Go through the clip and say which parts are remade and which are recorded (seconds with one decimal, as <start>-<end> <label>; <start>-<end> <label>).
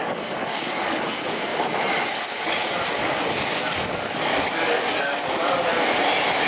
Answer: 0.0-1.5 remade; 1.5-2.1 recorded; 2.1-5.7 remade; 5.7-6.5 recorded